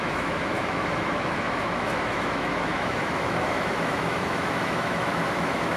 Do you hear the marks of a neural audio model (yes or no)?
yes